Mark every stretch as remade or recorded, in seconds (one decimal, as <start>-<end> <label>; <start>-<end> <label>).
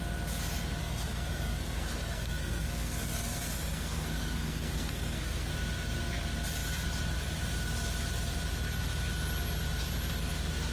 0.0-0.8 recorded; 0.8-5.5 remade; 5.5-10.7 recorded